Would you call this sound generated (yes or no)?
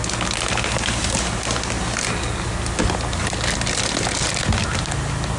no